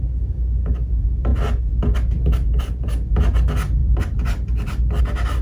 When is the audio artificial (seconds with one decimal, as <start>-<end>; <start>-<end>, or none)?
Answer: 3.8-5.0